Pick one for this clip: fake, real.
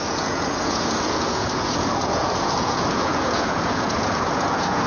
fake